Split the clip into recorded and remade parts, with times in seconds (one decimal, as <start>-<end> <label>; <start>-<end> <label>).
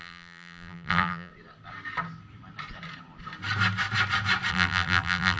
0.0-1.3 remade; 1.3-4.5 recorded; 4.5-5.4 remade